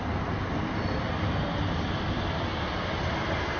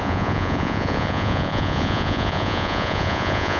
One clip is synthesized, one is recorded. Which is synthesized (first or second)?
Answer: second